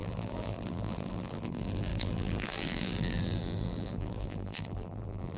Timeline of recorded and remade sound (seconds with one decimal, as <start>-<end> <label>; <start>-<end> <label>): 0.0-5.4 remade